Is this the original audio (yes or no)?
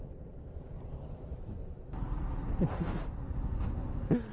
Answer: yes